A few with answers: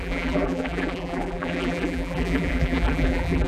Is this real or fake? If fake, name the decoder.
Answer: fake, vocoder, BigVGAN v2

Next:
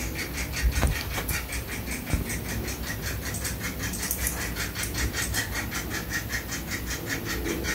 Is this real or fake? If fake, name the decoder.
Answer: real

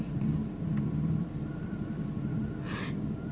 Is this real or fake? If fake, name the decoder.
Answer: fake, vocoder, BigVGAN v2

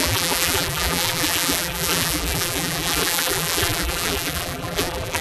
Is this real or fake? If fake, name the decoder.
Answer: fake, vocoder, BigVGAN v2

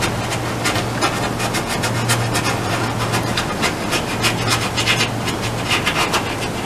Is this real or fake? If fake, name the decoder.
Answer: real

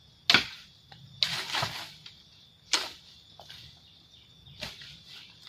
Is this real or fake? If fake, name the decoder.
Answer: real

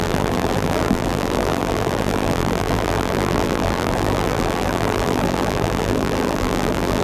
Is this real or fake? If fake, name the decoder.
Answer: fake, vocoder, BigVGAN v2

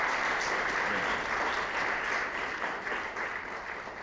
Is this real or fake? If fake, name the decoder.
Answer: real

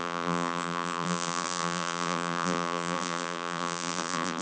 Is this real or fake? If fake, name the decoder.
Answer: fake, vocoder, BigVGAN v2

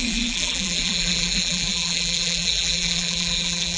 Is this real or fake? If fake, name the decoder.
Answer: fake, vocoder, BigVGAN v2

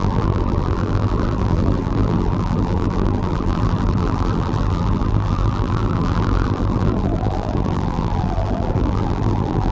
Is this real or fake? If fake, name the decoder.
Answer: fake, vocoder, BigVGAN v2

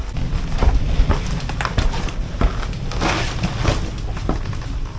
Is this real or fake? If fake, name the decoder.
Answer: real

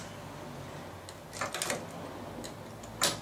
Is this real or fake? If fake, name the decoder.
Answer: real